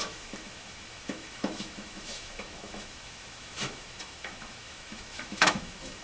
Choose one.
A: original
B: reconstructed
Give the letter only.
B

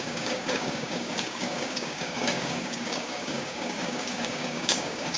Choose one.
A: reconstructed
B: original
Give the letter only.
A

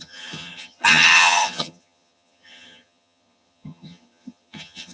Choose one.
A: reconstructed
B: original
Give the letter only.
A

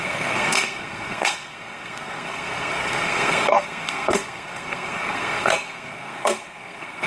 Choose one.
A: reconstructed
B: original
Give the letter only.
A